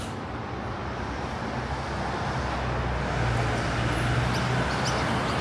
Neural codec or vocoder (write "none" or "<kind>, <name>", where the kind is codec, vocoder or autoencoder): none